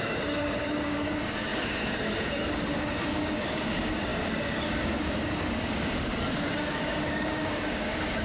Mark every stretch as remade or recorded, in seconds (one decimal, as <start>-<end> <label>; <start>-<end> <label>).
0.0-8.2 remade